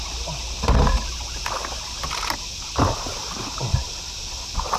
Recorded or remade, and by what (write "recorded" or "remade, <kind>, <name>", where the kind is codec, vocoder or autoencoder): recorded